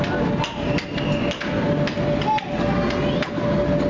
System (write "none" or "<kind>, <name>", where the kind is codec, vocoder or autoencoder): none